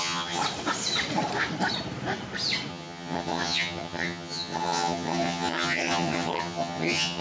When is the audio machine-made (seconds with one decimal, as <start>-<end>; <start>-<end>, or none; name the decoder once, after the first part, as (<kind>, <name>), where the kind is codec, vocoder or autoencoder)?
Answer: 0.0-0.4 (vocoder, HiFi-GAN); 2.7-7.2